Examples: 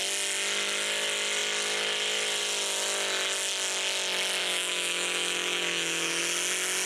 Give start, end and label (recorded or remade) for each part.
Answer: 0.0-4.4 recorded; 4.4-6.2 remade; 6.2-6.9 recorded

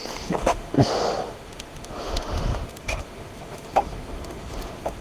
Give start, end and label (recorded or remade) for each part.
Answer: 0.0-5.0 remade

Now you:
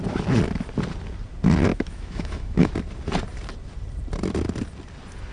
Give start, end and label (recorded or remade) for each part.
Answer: 0.0-1.7 recorded; 1.7-2.7 remade; 2.7-5.3 recorded

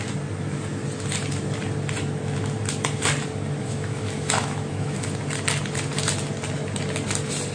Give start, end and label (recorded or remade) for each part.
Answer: 0.0-3.6 recorded; 3.6-5.1 remade; 5.1-7.5 recorded

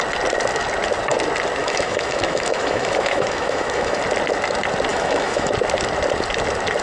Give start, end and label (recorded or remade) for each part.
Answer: 0.0-1.6 recorded; 1.6-4.0 remade; 4.0-4.9 recorded; 4.9-5.5 remade; 5.5-6.8 recorded

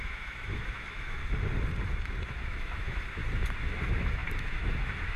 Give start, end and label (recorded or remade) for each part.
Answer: 0.0-1.2 remade; 1.2-1.9 recorded; 1.9-3.2 remade; 3.2-3.7 recorded; 3.7-5.2 remade

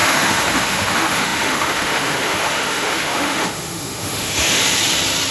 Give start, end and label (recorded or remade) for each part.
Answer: 0.0-4.6 remade; 4.6-5.3 recorded